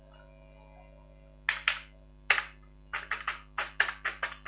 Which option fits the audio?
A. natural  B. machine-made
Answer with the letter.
A